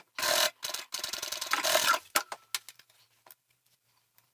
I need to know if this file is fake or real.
real